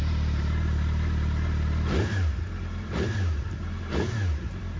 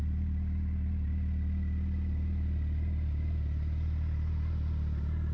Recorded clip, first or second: second